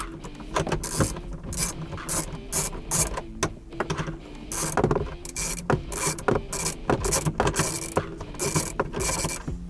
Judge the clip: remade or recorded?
recorded